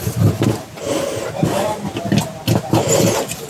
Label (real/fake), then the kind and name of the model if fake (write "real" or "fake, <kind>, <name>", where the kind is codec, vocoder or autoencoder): real